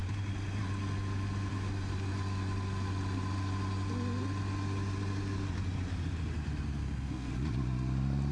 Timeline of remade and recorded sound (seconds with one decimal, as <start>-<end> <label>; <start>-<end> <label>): 0.0-6.8 recorded; 6.8-7.3 remade; 7.3-8.3 recorded